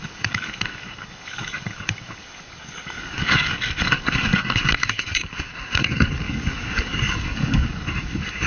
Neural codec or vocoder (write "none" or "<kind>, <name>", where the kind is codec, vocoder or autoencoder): codec, DAC